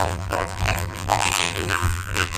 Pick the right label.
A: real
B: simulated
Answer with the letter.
B